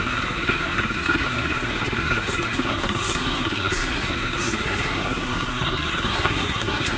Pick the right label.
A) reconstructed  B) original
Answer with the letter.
A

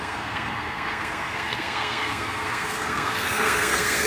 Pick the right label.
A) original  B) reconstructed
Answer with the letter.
B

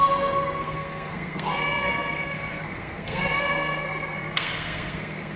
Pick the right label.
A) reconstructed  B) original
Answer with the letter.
A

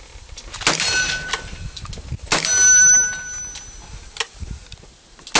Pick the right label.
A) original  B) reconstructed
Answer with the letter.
A